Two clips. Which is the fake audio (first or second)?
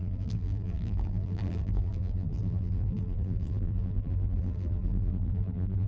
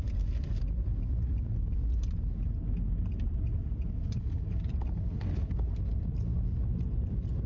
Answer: first